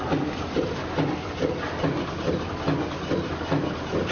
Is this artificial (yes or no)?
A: no